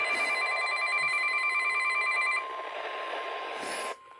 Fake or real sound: real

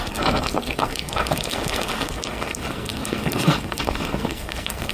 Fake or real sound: fake